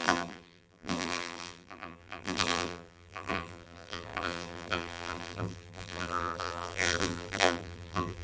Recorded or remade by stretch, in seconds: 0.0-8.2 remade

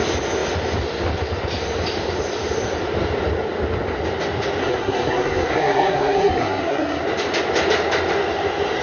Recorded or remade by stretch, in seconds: 0.0-4.6 recorded; 4.6-7.0 remade; 7.0-8.8 recorded

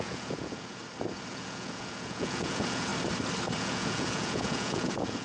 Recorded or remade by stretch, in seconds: 0.0-0.8 remade; 0.8-1.3 recorded; 1.3-2.9 remade; 2.9-3.6 recorded; 3.6-5.2 remade

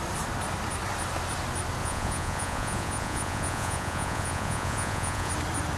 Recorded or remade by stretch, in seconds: 0.0-1.8 recorded; 1.8-5.3 remade; 5.3-5.8 recorded

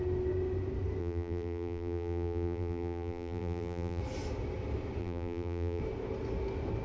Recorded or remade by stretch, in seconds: 0.0-1.0 recorded; 1.0-4.0 remade; 4.0-5.0 recorded; 5.0-5.8 remade; 5.8-6.8 recorded